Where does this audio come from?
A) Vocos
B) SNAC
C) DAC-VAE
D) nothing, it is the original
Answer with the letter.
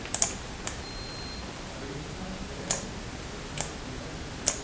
D